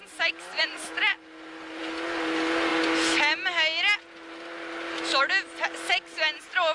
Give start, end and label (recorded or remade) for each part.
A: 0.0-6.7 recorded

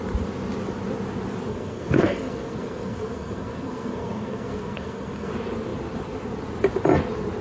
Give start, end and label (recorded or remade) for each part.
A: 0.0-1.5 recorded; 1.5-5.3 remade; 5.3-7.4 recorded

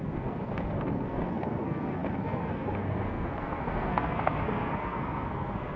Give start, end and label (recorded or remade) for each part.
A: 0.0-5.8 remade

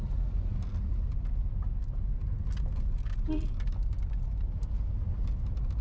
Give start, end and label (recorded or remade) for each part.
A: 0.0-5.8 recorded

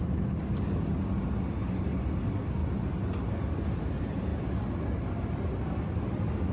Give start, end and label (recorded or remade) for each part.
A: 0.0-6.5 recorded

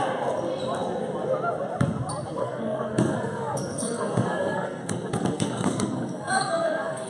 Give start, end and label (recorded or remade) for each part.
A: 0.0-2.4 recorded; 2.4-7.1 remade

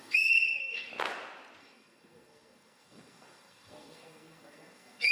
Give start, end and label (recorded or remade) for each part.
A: 0.0-0.9 remade; 0.9-1.6 recorded; 1.6-5.1 remade

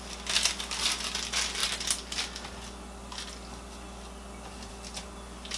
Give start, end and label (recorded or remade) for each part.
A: 0.0-5.6 recorded